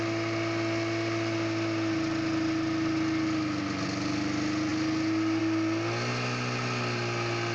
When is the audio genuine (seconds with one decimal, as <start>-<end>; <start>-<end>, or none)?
0.0-7.5